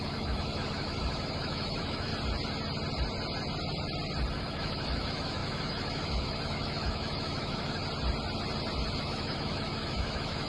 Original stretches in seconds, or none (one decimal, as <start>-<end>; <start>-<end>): 2.1-4.4; 7.8-9.0